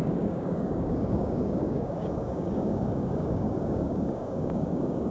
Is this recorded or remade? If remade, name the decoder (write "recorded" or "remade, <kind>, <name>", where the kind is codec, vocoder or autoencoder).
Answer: remade, codec, DAC